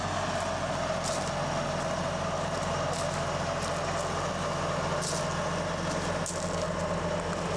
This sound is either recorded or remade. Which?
recorded